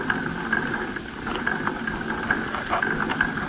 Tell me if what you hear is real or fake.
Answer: real